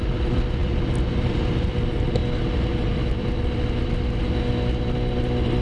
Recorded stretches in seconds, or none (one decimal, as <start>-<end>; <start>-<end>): 0.0-5.6